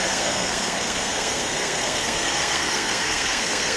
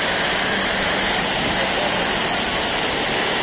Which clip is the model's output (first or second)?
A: first